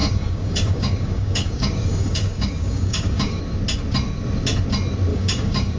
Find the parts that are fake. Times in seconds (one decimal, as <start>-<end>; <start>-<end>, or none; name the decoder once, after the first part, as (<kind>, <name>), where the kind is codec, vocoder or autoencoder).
0.0-3.4 (codec, DAC); 5.1-5.8